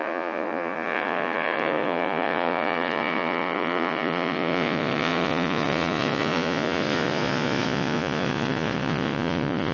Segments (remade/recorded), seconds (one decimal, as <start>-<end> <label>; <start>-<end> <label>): 0.0-9.7 remade